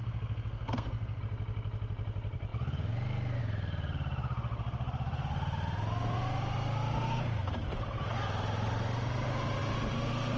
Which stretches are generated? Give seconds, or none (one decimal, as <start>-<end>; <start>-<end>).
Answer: 0.0-1.2